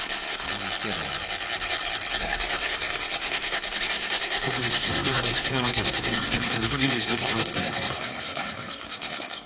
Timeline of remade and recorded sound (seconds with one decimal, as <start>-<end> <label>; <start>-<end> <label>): 0.0-0.5 remade; 0.5-2.2 recorded; 2.2-9.5 remade